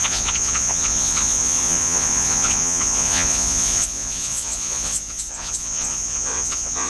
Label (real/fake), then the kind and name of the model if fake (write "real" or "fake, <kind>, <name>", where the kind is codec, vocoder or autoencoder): fake, vocoder, Vocos